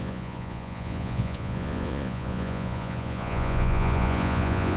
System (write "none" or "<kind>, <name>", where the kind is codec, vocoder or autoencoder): vocoder, Vocos